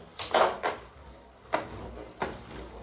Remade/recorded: recorded